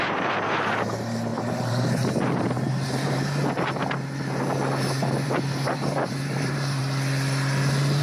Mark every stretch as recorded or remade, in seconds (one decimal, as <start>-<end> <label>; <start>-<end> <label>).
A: 0.0-6.8 remade; 6.8-8.0 recorded